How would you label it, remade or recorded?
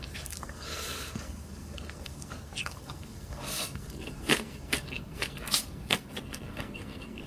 remade